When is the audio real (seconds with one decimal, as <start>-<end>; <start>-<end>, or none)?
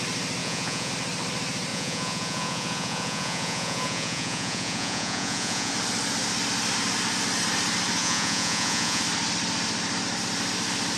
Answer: 0.0-0.4; 0.9-1.7; 5.7-8.0; 9.0-11.0